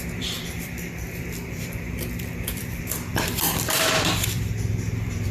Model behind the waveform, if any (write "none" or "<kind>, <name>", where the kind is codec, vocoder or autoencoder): vocoder, BigVGAN v2